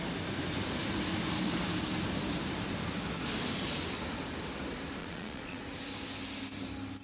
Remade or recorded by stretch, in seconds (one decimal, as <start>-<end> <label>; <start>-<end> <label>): 0.0-5.0 recorded; 5.0-5.6 remade; 5.6-7.0 recorded